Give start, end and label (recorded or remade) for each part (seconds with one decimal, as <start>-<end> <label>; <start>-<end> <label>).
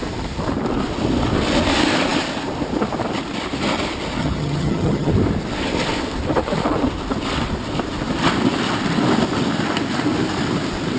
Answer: 0.0-4.2 recorded; 4.2-5.1 remade; 5.1-11.0 recorded